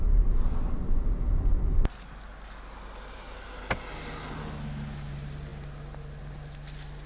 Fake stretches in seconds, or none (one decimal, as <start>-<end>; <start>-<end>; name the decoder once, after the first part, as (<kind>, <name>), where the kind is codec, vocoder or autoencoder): none